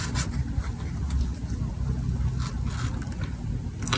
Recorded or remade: recorded